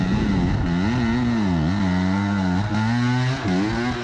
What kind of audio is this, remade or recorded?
recorded